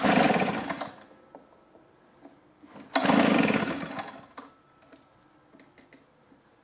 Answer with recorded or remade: recorded